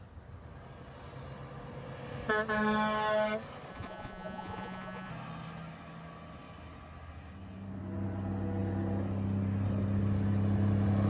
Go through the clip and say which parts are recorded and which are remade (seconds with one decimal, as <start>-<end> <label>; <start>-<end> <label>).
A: 0.0-3.7 recorded; 3.7-5.1 remade; 5.1-11.1 recorded